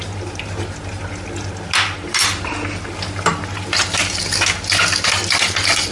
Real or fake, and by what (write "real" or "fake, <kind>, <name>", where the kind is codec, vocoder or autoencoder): real